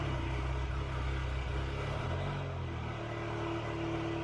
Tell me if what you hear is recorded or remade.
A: recorded